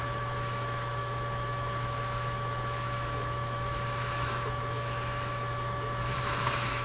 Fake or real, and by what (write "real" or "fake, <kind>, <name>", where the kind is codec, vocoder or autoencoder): fake, autoencoder, DAC-VAE